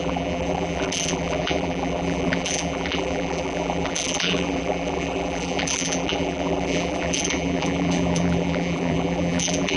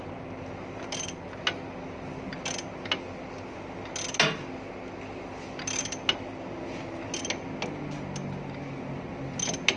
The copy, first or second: first